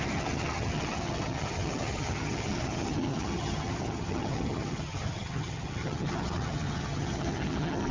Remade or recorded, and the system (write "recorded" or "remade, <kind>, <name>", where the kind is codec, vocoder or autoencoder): remade, vocoder, HiFi-GAN